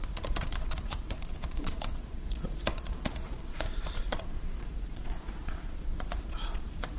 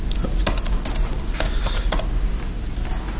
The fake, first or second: first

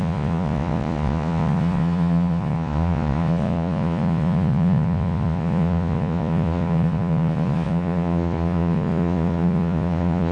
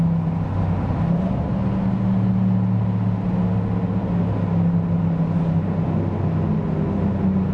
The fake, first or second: first